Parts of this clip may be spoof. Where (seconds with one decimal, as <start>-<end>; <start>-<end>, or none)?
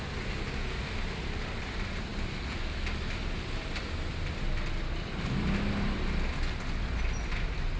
none